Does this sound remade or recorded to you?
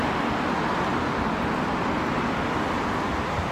recorded